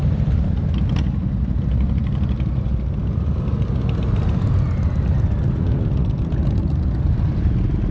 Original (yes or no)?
yes